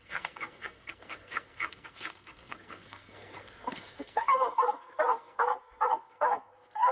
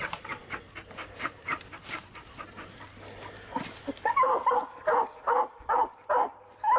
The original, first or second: second